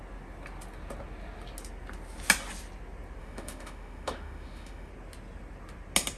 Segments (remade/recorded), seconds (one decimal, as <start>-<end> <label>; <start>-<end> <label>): 0.0-3.2 recorded; 3.2-4.9 remade; 4.9-6.2 recorded